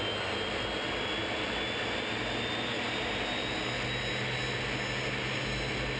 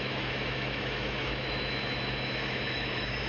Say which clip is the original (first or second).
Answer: first